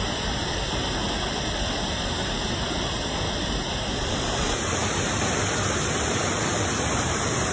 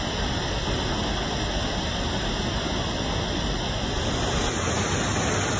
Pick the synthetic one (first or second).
first